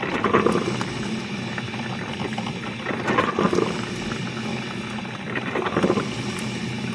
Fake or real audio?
real